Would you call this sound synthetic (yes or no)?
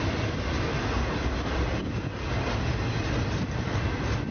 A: no